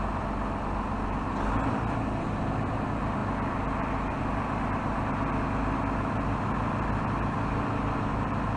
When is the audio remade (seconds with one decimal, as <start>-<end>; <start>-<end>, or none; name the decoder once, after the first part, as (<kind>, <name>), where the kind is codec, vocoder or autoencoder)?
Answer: none